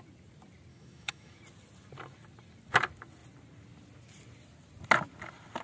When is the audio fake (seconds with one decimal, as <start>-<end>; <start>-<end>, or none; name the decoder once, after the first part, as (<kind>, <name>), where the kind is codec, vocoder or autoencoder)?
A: 0.7-1.4 (autoencoder, DAC-VAE)